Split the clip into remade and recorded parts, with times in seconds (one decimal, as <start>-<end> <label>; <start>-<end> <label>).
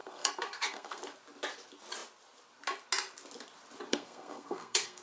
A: 0.0-1.0 remade; 1.0-3.9 recorded; 3.9-5.0 remade